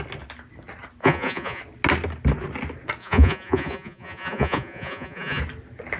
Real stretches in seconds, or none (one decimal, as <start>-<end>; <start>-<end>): 0.0-1.0; 1.6-3.0; 5.4-6.0

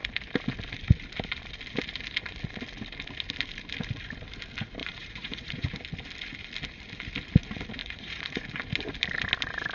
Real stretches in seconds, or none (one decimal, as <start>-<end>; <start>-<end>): 0.0-4.8; 5.7-7.8; 8.4-9.7

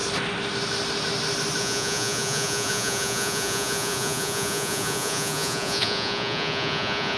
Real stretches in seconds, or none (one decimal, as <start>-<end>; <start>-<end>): 0.0-1.6

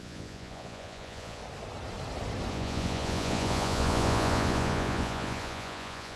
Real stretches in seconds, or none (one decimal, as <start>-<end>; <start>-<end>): 1.4-2.5

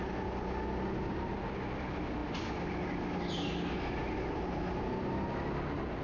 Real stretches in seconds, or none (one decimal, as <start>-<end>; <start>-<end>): 0.0-6.0

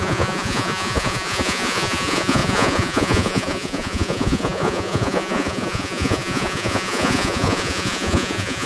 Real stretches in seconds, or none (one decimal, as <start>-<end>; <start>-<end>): none

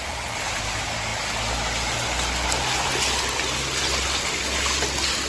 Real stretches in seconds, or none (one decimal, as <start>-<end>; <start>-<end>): 0.0-5.3

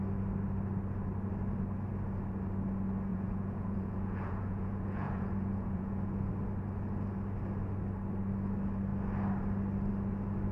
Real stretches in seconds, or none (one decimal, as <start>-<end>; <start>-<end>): 0.0-3.1; 6.3-10.5